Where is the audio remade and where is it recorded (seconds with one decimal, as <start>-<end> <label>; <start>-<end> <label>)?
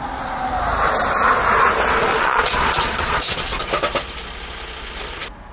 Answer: 0.0-2.1 recorded; 2.1-3.2 remade; 3.2-5.5 recorded